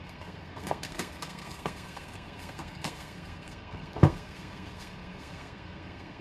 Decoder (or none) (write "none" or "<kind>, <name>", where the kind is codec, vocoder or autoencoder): codec, SNAC